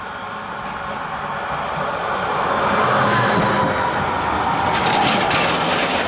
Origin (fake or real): real